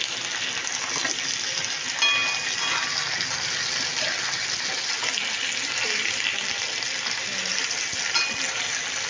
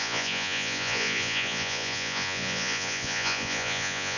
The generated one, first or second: second